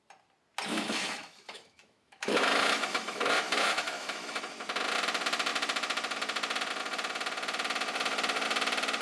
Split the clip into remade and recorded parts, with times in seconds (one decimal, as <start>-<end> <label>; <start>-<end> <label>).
0.0-0.7 recorded; 0.7-4.4 remade; 4.4-9.0 recorded